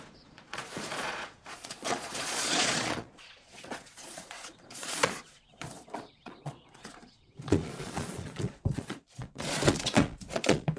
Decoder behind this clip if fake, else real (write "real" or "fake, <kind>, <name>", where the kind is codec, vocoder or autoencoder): fake, vocoder, Vocos